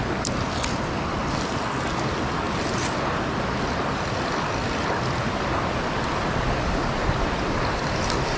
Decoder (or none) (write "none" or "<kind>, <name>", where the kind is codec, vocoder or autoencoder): none